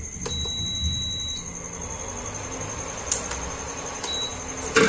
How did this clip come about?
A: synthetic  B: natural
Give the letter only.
B